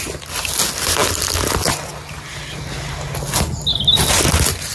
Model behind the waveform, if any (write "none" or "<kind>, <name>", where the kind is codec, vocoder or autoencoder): none